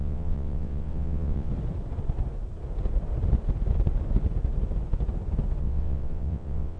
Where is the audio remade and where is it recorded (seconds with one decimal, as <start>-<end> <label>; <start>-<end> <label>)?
0.0-1.5 remade; 1.5-5.6 recorded; 5.6-6.8 remade